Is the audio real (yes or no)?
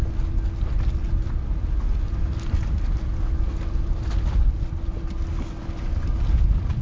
yes